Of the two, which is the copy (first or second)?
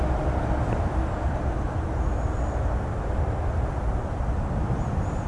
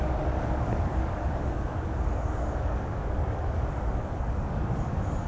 second